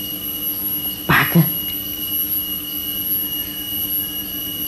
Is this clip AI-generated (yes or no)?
no